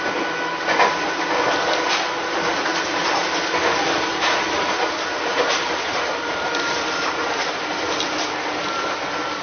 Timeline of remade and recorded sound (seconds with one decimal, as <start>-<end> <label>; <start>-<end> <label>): 0.0-2.7 recorded; 2.7-6.9 remade; 6.9-9.4 recorded